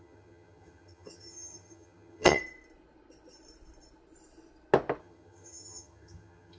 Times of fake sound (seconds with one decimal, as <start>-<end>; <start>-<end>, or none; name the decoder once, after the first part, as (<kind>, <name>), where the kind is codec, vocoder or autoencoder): 0.0-2.4 (vocoder, HiFi-GAN); 5.0-6.6